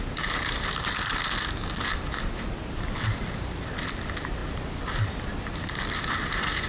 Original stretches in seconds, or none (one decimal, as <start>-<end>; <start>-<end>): 0.0-6.7